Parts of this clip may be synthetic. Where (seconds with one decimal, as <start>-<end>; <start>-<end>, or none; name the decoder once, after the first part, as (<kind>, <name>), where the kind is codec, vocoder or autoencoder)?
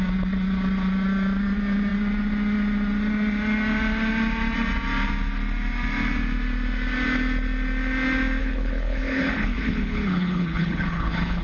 8.4-11.4 (codec, HILCodec)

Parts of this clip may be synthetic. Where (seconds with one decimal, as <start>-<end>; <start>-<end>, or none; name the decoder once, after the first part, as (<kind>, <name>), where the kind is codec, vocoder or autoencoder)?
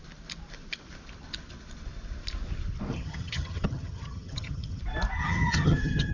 2.9-4.8 (vocoder, HiFi-GAN); 5.2-6.1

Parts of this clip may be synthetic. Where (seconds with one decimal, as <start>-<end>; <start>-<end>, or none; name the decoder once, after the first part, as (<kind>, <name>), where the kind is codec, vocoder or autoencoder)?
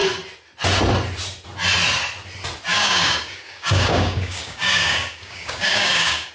2.7-6.3 (codec, DAC)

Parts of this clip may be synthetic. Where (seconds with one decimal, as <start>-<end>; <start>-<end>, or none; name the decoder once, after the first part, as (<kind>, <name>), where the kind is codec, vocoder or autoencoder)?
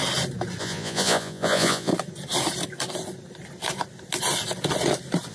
0.6-1.9 (vocoder, Vocos)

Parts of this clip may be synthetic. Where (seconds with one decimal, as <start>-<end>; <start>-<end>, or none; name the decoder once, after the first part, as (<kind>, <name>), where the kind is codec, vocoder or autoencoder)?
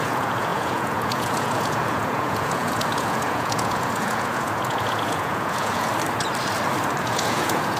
0.0-5.9 (vocoder, Vocos); 7.0-7.8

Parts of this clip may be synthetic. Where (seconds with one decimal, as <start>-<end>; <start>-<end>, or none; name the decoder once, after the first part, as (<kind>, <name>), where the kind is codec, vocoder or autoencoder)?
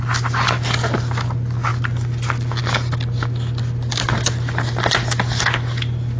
none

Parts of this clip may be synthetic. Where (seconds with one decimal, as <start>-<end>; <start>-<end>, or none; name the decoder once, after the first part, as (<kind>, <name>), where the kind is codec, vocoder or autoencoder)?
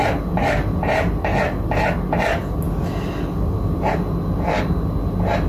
none